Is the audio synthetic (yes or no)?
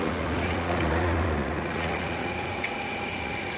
yes